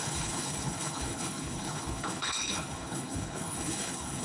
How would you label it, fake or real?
fake